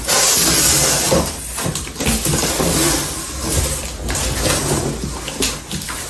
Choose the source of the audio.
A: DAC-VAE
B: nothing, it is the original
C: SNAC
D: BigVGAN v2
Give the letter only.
B